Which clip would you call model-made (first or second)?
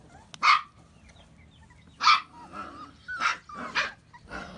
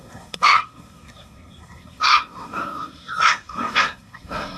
second